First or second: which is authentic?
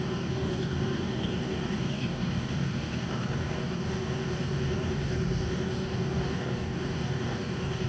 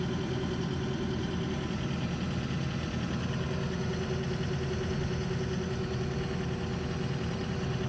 second